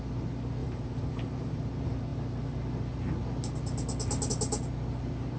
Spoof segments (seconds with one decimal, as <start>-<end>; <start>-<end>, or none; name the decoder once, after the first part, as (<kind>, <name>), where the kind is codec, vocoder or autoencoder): 0.6-1.7 (vocoder, BigVGAN v2)